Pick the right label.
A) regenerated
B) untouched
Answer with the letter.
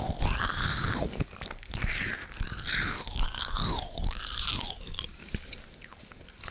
B